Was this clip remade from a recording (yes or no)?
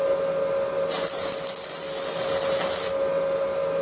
no